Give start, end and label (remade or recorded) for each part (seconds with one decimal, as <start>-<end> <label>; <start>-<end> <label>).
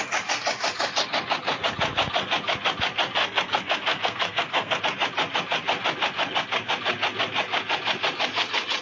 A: 0.0-3.2 recorded; 3.2-4.8 remade; 4.8-8.8 recorded